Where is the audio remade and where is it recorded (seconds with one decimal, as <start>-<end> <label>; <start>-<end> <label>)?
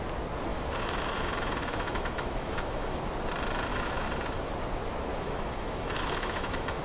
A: 0.0-0.5 recorded; 0.5-3.0 remade; 3.0-3.7 recorded; 3.7-4.5 remade; 4.5-5.1 recorded; 5.1-6.8 remade